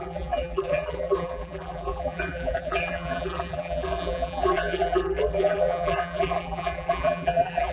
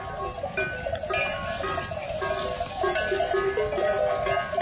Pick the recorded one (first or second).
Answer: second